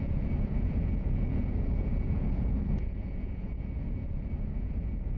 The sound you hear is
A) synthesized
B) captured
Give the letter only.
A